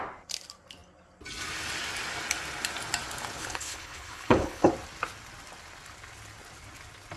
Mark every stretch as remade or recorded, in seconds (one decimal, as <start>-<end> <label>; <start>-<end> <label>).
0.0-3.4 recorded; 3.4-4.7 remade; 4.7-7.2 recorded